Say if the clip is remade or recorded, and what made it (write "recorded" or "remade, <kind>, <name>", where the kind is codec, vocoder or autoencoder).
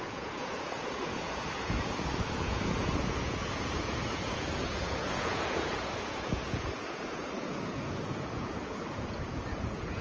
remade, vocoder, Vocos